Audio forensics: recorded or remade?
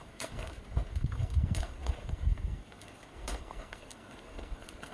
remade